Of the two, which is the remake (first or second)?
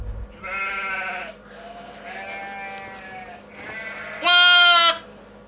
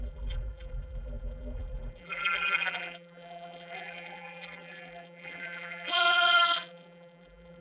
second